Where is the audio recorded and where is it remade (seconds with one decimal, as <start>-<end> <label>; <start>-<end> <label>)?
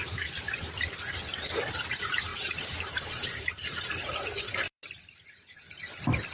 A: 0.0-0.6 remade; 0.6-2.3 recorded; 2.3-5.1 remade; 5.1-6.3 recorded